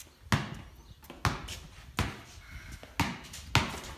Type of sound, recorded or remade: recorded